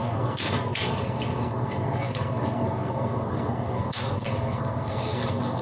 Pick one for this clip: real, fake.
fake